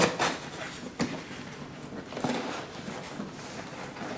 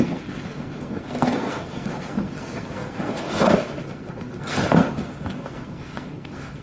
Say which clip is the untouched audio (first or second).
first